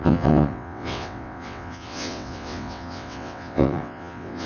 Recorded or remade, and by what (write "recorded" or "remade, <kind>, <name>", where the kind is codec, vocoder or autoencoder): remade, vocoder, WaveNeXt